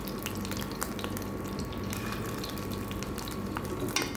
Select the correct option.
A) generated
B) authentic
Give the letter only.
B